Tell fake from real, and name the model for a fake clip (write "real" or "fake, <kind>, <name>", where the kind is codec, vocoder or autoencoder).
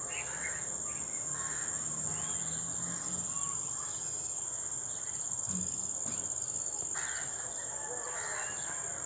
real